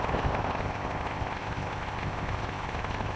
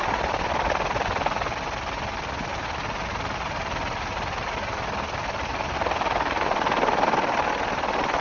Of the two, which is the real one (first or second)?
second